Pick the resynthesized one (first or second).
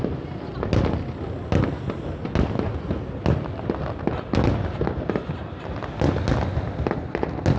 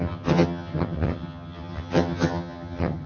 second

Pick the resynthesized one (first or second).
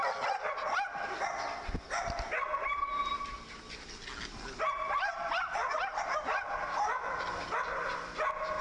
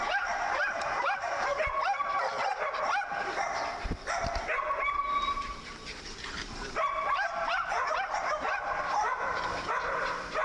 second